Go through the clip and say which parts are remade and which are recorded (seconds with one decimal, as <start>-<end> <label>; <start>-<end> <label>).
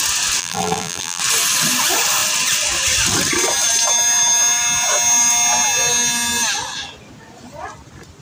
0.0-0.4 recorded; 0.4-1.2 remade; 1.2-8.2 recorded